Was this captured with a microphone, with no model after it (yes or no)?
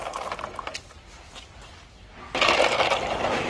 yes